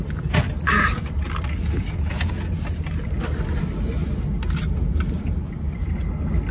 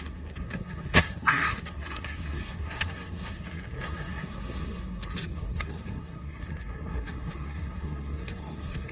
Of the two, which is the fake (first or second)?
second